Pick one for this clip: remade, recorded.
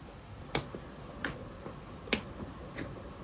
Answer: recorded